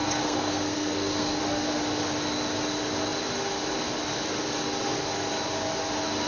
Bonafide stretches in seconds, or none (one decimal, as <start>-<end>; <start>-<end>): 1.4-6.3